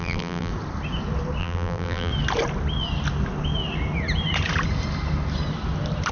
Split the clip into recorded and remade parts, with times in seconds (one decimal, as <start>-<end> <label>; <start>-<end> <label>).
0.0-0.5 remade; 0.5-1.4 recorded; 1.4-2.1 remade; 2.1-6.1 recorded